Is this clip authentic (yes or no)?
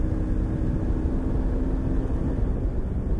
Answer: yes